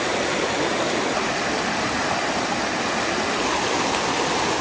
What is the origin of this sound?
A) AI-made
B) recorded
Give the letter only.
B